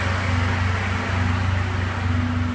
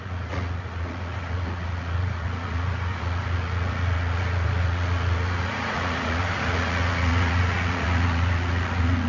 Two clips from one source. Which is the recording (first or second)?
first